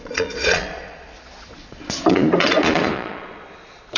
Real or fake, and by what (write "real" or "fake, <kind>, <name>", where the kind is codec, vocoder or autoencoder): fake, vocoder, Vocos